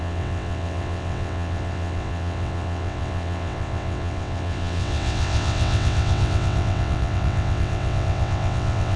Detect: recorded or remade remade